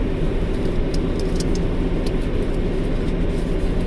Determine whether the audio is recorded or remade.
recorded